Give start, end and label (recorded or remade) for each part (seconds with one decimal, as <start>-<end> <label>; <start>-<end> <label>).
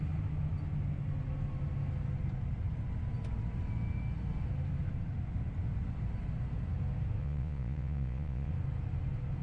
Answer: 0.0-7.2 recorded; 7.2-8.5 remade; 8.5-9.4 recorded